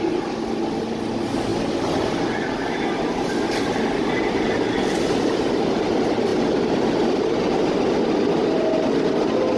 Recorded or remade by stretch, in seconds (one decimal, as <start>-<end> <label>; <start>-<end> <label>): 0.0-9.6 recorded